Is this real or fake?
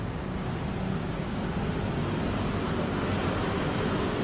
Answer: real